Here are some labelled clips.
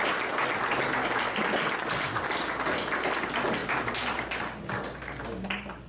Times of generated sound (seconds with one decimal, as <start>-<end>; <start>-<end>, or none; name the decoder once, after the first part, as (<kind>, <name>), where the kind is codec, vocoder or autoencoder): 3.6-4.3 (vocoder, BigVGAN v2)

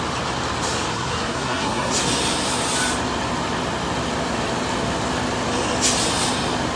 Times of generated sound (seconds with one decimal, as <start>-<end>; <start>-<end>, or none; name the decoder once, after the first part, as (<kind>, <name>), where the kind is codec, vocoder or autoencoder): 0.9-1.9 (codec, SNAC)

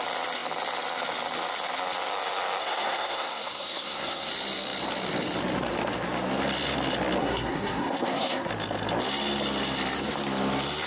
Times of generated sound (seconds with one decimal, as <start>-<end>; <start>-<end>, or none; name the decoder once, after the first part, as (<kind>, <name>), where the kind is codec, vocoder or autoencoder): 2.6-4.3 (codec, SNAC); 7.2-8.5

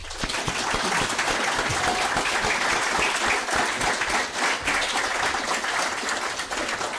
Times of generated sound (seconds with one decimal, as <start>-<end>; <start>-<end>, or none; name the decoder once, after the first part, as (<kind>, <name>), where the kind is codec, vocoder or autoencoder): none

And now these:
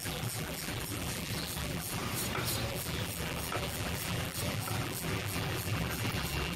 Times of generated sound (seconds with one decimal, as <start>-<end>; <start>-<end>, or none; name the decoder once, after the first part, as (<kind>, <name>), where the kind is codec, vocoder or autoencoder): 0.0-2.0 (vocoder, BigVGAN v2); 2.7-6.6

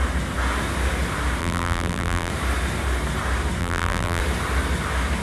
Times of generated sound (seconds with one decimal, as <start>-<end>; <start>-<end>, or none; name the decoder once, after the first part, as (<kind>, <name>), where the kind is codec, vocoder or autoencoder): 1.4-2.3 (vocoder, BigVGAN v2); 3.6-4.2